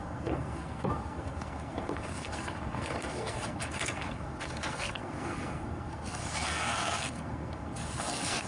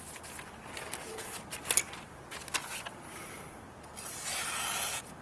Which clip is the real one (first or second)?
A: second